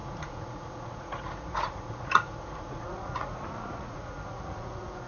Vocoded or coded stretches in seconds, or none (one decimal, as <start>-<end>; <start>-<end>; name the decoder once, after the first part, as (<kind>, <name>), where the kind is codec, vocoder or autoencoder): 0.0-5.1 (vocoder, Vocos)